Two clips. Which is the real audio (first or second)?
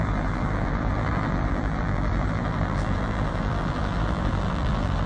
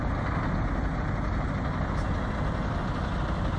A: second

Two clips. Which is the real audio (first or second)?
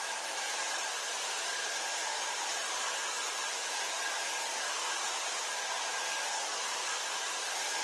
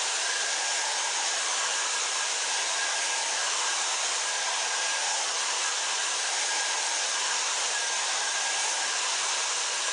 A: first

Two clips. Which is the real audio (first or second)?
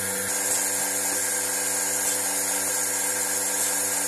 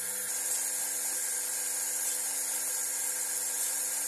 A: first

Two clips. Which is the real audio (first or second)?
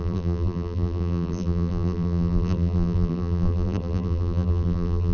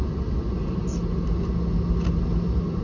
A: second